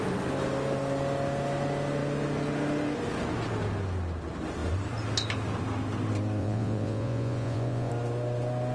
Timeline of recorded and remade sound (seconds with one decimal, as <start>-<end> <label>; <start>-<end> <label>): 0.0-6.4 recorded; 6.4-7.9 remade; 7.9-8.7 recorded